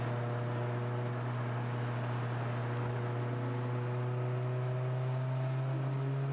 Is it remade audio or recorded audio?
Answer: recorded